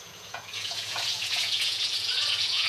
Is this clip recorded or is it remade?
remade